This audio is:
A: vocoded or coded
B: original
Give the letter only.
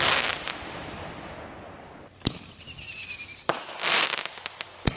B